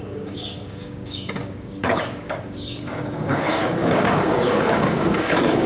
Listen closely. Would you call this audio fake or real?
fake